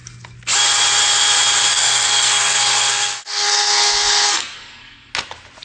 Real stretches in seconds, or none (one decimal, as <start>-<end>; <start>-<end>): 0.0-1.7; 5.1-5.6